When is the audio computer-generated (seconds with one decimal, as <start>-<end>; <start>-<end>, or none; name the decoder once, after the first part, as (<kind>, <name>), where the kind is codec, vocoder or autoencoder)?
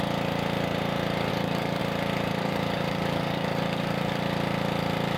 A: 1.3-1.8 (codec, DAC); 2.3-4.2